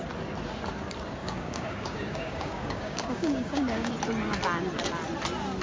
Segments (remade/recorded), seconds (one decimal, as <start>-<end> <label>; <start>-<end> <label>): 0.0-1.2 recorded; 1.2-3.9 remade; 3.9-5.6 recorded

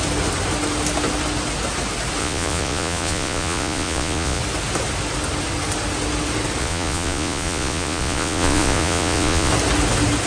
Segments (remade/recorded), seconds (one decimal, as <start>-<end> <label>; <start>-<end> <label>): 0.0-2.2 recorded; 2.2-4.4 remade; 4.4-6.6 recorded; 6.6-9.5 remade; 9.5-10.3 recorded

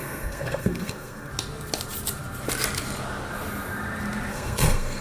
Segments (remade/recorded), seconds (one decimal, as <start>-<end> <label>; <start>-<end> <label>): 0.0-1.3 remade; 1.3-4.3 recorded; 4.3-5.0 remade

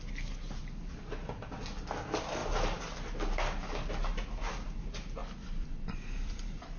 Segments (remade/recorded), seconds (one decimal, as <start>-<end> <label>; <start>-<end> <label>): 0.0-0.6 remade; 0.6-5.2 recorded; 5.2-6.8 remade

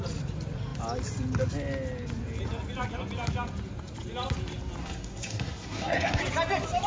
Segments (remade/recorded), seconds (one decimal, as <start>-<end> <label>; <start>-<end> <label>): 0.0-4.8 recorded; 4.8-6.2 remade; 6.2-6.9 recorded

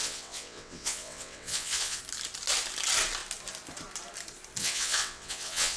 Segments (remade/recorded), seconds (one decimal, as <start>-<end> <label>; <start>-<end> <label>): 0.0-2.0 remade; 2.0-4.6 recorded; 4.6-5.8 remade

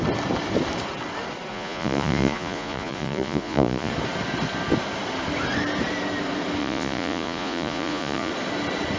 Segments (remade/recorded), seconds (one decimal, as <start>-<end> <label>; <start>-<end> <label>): 0.0-1.5 recorded; 1.5-3.9 remade; 3.9-6.6 recorded; 6.6-8.3 remade; 8.3-9.0 recorded